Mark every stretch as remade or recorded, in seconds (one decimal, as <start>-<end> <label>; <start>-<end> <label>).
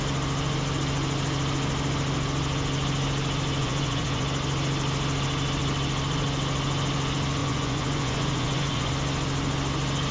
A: 0.0-3.6 recorded; 3.6-4.2 remade; 4.2-7.4 recorded; 7.4-8.9 remade; 8.9-10.1 recorded